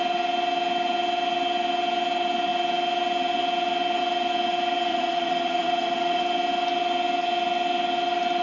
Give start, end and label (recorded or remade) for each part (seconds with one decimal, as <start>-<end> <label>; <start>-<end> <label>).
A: 0.0-4.9 recorded; 4.9-6.2 remade; 6.2-8.4 recorded